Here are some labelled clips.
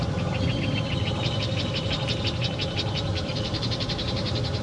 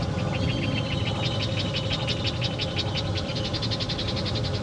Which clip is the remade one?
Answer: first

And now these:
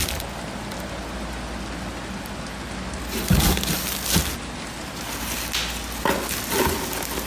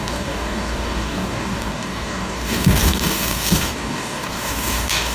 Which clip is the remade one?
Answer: second